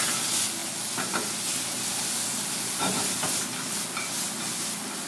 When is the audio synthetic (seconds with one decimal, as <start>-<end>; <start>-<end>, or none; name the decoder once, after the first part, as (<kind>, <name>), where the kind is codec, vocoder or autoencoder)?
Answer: none